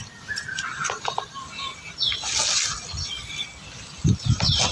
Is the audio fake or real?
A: real